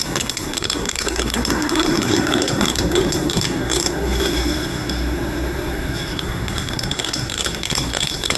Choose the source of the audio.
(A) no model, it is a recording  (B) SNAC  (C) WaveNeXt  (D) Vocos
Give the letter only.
B